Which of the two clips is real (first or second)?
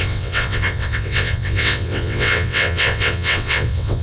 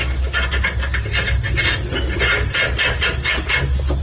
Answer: second